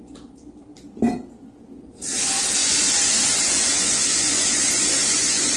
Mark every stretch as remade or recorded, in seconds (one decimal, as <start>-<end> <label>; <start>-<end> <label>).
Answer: 0.0-2.6 recorded; 2.6-5.6 remade